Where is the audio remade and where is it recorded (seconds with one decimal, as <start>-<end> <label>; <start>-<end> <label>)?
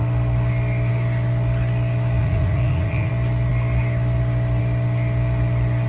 0.0-2.2 recorded; 2.2-3.1 remade; 3.1-5.9 recorded